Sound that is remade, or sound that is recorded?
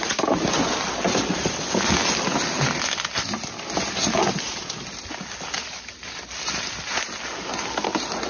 recorded